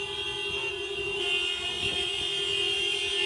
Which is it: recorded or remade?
recorded